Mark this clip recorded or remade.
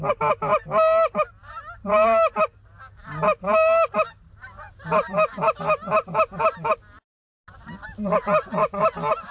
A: recorded